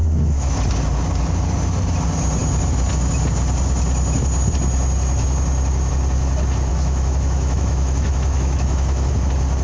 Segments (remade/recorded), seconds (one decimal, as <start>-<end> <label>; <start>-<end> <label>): 0.0-0.6 remade; 0.6-6.7 recorded; 6.7-9.1 remade; 9.1-9.6 recorded